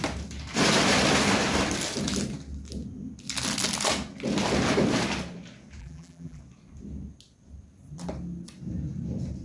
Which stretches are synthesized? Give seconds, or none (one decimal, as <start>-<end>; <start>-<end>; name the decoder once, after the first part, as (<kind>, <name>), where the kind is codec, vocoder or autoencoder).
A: 5.8-6.4 (vocoder, BigVGAN v2)